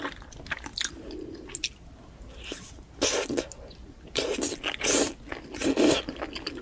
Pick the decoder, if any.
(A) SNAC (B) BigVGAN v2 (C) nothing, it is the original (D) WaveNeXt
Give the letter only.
C